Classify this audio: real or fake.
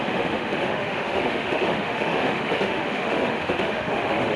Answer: fake